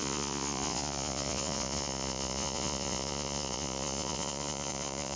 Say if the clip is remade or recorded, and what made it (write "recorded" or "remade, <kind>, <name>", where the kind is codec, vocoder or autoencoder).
remade, vocoder, Vocos